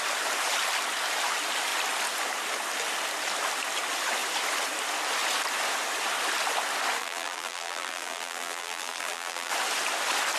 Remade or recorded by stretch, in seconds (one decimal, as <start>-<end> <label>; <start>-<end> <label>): 0.0-7.0 recorded; 7.0-9.5 remade; 9.5-10.4 recorded